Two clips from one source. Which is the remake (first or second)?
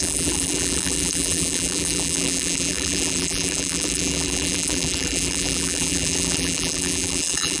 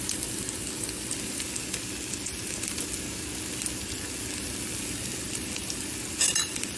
first